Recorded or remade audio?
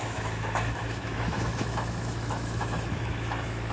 remade